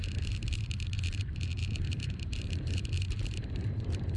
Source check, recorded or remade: remade